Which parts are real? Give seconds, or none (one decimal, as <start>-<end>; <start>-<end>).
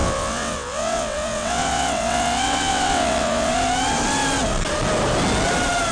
3.5-5.9